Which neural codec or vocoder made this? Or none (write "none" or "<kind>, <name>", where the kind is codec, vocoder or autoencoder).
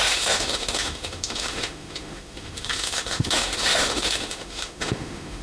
autoencoder, DAC-VAE